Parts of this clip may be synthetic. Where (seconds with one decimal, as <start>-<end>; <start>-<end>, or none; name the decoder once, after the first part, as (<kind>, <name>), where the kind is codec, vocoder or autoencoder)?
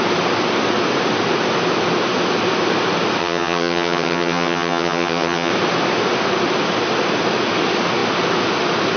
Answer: 3.2-5.5 (vocoder, HiFi-GAN)